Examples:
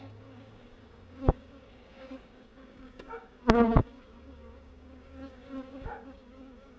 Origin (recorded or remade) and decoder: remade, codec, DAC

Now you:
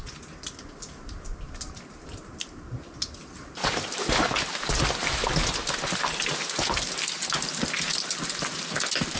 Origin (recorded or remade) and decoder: recorded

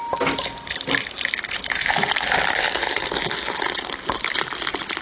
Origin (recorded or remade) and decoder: recorded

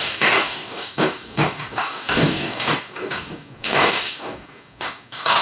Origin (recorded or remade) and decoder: remade, codec, DAC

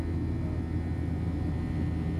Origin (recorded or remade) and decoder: recorded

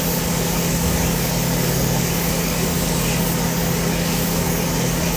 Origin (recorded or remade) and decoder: remade, codec, DAC